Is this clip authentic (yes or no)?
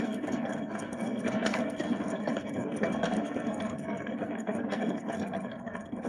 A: no